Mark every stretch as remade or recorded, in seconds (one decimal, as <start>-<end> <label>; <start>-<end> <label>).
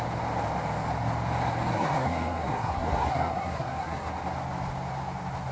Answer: 0.0-1.7 recorded; 1.7-4.1 remade; 4.1-5.5 recorded